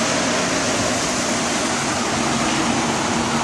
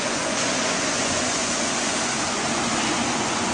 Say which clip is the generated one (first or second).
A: second